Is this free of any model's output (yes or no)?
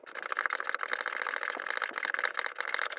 yes